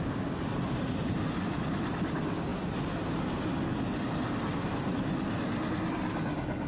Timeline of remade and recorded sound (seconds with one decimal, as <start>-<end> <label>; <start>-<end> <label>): 0.0-6.7 recorded